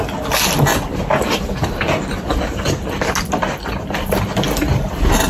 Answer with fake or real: real